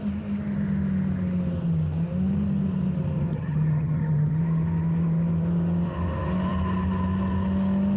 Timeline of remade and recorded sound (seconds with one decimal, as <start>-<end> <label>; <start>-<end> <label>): 0.0-3.3 recorded; 3.3-4.4 remade; 4.4-8.0 recorded